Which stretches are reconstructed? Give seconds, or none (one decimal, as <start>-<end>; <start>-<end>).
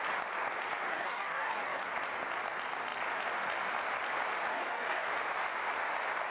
0.9-1.8; 4.5-5.1